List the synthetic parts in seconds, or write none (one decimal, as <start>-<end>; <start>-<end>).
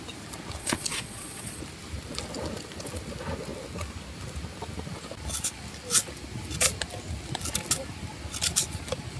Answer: 0.6-1.6